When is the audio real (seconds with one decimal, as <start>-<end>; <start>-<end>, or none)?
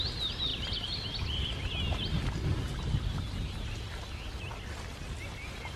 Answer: 0.0-5.8